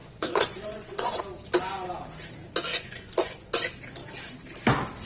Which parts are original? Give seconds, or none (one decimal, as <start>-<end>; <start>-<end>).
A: 1.2-2.7; 3.5-5.1